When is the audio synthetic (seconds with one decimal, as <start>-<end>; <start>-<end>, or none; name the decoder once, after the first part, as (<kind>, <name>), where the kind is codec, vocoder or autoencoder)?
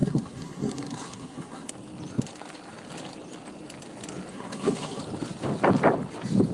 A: 0.0-1.7 (codec, SNAC); 4.3-5.0